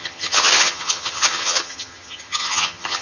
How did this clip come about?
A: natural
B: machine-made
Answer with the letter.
B